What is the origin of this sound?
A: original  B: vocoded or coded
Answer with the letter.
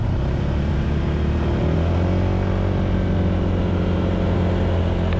A